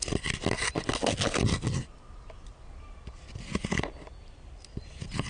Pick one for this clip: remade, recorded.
recorded